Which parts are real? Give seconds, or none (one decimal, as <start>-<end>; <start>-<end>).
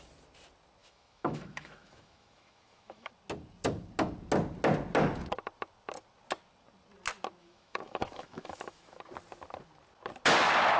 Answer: 0.0-0.8; 3.1-7.4; 9.0-10.8